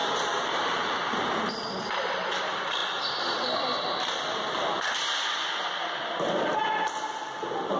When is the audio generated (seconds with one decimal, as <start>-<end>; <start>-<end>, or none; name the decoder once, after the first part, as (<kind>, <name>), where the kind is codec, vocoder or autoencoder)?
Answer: 0.0-2.4 (vocoder, BigVGAN v2)